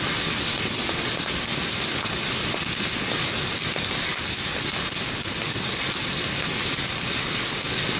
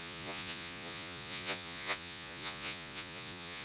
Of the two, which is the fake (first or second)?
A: second